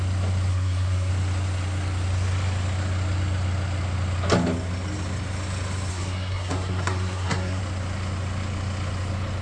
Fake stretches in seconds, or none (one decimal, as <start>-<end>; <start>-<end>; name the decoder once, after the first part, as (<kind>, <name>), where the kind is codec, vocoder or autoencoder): 0.5-1.1 (codec, SNAC); 5.9-7.6